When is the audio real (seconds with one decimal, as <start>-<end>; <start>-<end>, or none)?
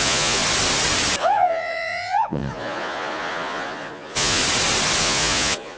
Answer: 0.4-1.2; 4.4-5.0